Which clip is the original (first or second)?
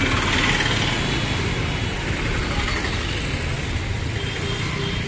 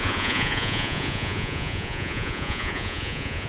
first